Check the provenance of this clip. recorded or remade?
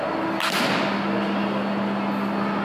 recorded